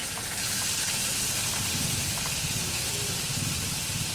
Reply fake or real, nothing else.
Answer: fake